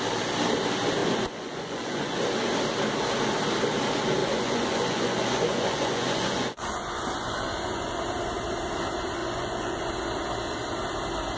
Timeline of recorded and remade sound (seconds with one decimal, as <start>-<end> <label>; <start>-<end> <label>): 0.0-1.0 recorded; 1.0-2.2 remade; 2.2-4.2 recorded; 4.2-8.0 remade; 8.0-9.2 recorded; 9.2-9.9 remade; 9.9-11.4 recorded